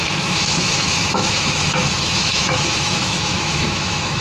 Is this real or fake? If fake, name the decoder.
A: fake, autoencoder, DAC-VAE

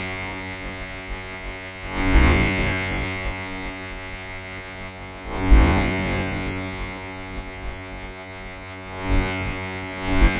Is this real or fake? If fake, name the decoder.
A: fake, vocoder, Vocos